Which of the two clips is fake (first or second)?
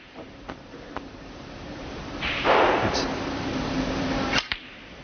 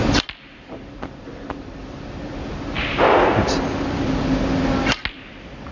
first